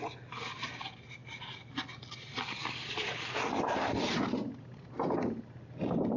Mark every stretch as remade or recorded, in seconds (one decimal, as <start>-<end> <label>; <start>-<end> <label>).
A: 0.0-6.2 recorded